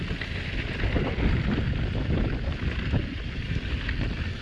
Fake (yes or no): yes